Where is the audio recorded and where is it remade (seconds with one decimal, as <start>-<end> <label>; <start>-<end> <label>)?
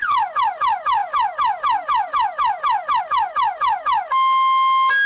0.0-5.1 recorded